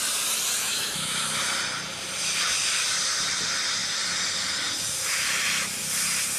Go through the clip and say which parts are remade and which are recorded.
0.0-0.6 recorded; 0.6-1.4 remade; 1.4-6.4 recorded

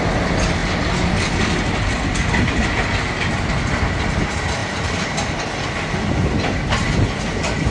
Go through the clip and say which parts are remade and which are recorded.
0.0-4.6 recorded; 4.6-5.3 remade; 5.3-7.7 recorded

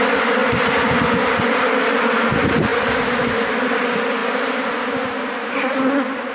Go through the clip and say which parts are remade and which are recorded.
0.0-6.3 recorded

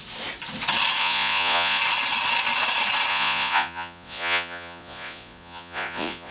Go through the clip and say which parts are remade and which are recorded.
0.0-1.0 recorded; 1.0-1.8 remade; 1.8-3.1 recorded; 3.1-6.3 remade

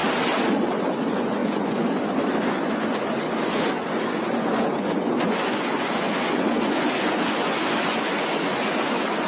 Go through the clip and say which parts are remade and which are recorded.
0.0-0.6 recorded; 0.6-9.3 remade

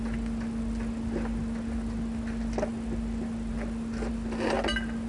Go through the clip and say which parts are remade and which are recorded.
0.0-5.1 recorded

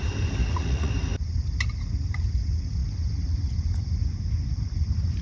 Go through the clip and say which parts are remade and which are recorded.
0.0-0.4 recorded; 0.4-0.9 remade; 0.9-5.2 recorded

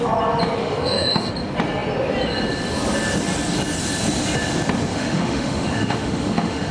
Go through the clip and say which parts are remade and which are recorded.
0.0-0.6 recorded; 0.6-1.3 remade; 1.3-4.9 recorded; 4.9-6.7 remade